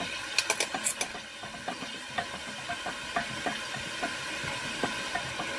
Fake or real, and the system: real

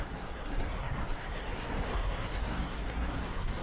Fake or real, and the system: fake, codec, SNAC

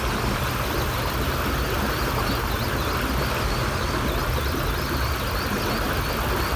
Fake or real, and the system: real